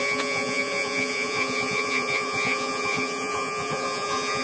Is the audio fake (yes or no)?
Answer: yes